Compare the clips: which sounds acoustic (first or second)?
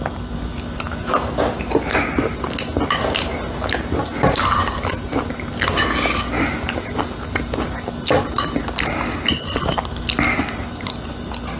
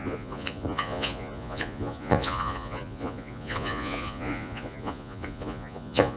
first